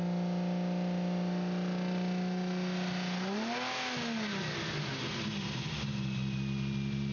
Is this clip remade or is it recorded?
recorded